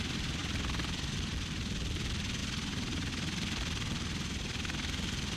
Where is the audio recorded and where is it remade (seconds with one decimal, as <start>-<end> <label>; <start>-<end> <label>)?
0.0-0.4 recorded; 0.4-1.3 remade; 1.3-2.4 recorded; 2.4-3.1 remade; 3.1-5.4 recorded